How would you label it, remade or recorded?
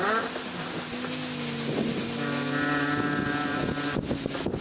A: recorded